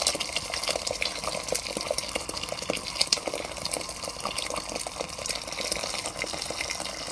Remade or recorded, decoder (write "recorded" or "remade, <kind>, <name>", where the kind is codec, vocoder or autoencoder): recorded